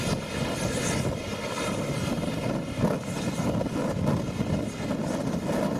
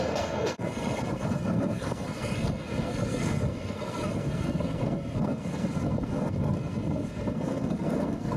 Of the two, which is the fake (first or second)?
second